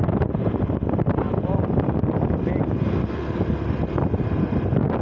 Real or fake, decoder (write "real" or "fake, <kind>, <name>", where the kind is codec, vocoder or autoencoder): real